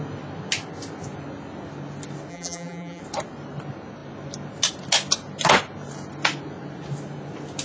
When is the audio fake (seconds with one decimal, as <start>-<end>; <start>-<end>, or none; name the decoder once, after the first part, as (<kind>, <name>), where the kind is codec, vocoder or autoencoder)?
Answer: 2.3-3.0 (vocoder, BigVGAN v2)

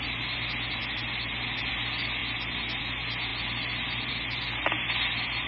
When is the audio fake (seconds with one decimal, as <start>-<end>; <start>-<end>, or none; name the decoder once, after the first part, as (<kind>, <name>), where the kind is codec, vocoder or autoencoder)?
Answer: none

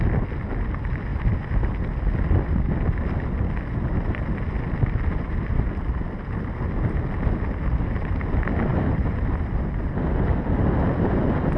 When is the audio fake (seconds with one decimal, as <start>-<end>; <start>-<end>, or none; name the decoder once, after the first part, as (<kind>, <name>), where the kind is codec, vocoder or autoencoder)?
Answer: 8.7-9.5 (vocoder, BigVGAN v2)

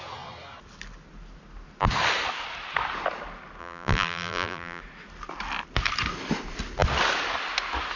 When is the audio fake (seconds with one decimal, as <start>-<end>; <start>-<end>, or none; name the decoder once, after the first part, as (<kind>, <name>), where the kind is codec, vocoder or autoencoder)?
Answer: 3.6-4.8 (vocoder, BigVGAN v2)

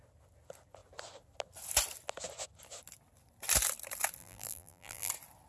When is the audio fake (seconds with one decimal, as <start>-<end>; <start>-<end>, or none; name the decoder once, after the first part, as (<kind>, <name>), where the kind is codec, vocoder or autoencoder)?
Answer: 4.2-5.1 (vocoder, BigVGAN v2)

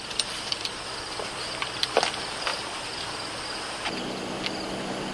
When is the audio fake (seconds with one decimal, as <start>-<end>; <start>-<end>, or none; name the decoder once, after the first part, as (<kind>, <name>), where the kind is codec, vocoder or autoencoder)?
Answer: 2.5-3.0 (vocoder, BigVGAN v2)